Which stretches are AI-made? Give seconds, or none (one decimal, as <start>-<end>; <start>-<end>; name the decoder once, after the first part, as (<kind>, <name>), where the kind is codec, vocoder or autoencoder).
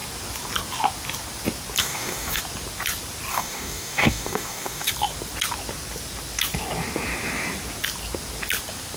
1.8-2.4 (codec, DAC); 3.3-4.9